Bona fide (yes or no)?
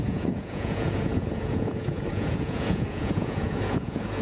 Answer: no